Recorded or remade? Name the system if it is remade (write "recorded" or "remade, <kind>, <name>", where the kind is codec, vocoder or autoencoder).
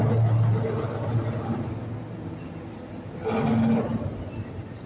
recorded